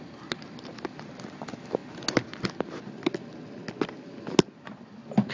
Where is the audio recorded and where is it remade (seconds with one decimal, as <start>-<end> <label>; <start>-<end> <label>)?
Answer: 0.0-5.3 recorded